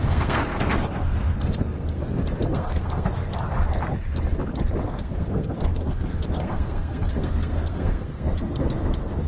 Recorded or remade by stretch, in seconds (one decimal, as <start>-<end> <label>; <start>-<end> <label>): 0.0-2.0 remade; 2.0-2.5 recorded; 2.5-3.2 remade; 3.2-4.8 recorded; 4.8-9.3 remade